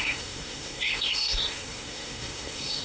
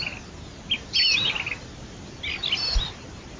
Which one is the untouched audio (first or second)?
second